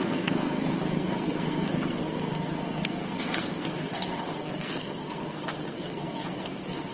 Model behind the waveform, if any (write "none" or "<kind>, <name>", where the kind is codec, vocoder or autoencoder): codec, SNAC